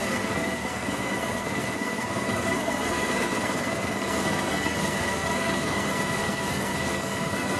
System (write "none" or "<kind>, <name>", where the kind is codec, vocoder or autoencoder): codec, SNAC